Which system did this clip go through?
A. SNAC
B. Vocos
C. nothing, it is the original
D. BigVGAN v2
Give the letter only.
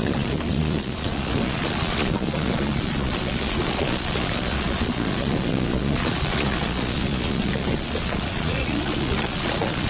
B